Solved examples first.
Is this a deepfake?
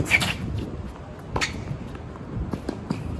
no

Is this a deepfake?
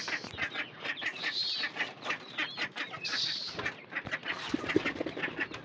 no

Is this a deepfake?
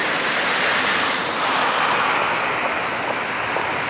no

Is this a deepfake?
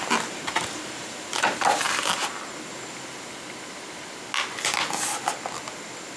no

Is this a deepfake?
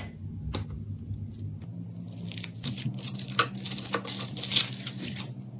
no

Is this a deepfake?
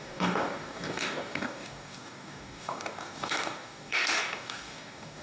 yes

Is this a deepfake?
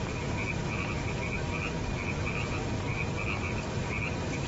no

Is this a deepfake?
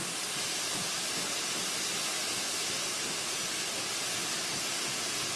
no